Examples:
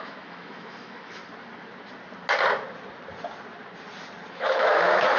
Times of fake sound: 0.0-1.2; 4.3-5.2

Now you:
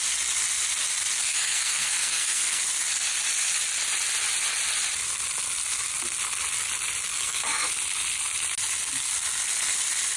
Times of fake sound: 1.2-2.6; 7.1-7.7

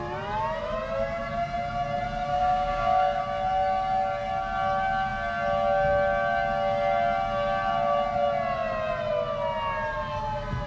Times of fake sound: 2.3-3.2

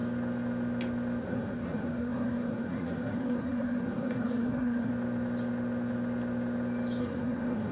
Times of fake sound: 1.2-4.9; 7.0-7.7

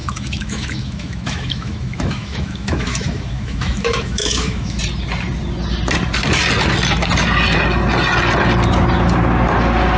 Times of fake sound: 0.0-4.8